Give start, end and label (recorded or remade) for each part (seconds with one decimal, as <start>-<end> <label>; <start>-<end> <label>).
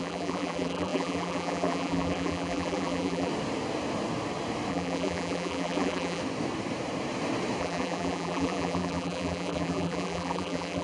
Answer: 0.0-3.3 remade; 3.3-4.7 recorded; 4.7-6.2 remade; 6.2-7.6 recorded; 7.6-10.8 remade